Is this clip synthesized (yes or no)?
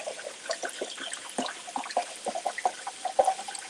no